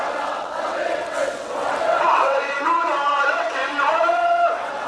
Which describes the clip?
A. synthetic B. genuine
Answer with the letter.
A